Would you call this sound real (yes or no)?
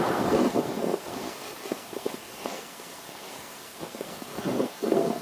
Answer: no